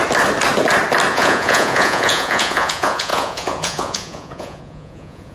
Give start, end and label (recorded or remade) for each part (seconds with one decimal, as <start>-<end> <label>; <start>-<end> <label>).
0.0-1.1 recorded; 1.1-5.3 remade